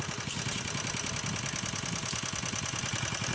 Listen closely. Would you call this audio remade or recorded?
recorded